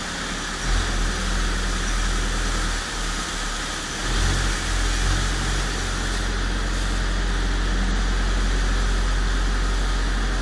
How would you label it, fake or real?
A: real